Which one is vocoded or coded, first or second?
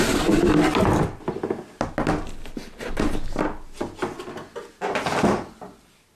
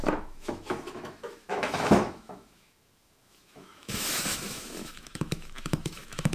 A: second